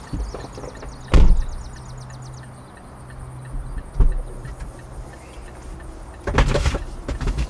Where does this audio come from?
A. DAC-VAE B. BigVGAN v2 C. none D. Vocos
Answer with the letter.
C